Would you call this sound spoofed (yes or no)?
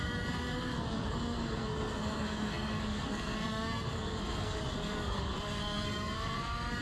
yes